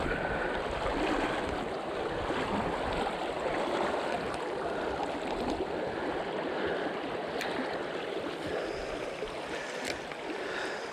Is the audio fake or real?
real